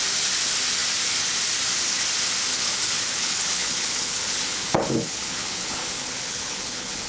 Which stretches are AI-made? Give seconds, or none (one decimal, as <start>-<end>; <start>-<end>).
2.5-7.1